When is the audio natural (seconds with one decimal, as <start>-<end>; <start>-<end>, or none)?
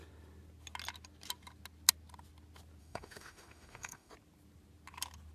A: 0.0-2.8; 4.1-5.3